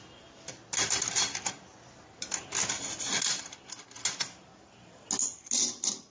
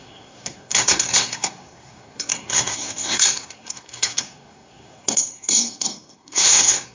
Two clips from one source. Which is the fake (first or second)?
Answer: second